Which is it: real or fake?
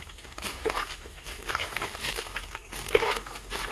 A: fake